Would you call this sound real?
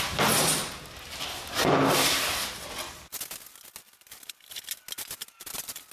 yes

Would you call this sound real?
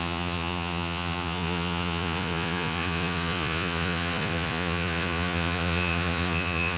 no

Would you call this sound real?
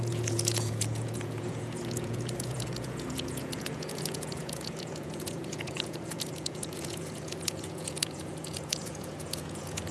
no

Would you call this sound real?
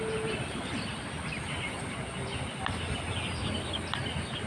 yes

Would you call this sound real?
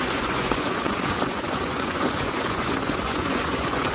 no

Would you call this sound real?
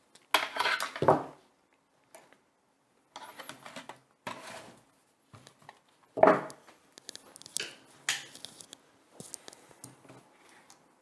yes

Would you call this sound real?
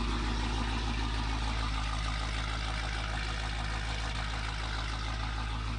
yes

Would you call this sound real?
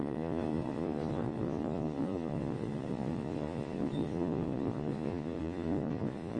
no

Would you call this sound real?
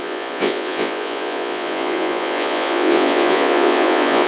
no